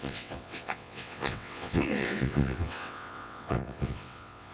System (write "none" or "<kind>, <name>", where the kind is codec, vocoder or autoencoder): vocoder, WaveNeXt